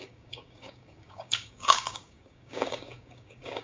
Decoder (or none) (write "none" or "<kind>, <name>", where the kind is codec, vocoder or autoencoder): codec, DAC